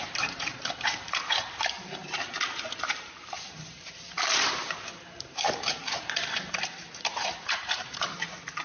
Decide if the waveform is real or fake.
fake